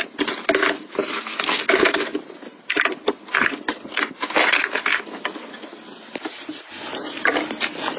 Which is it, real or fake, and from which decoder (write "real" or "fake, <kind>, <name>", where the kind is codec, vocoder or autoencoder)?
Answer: real